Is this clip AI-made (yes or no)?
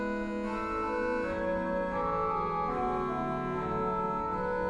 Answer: no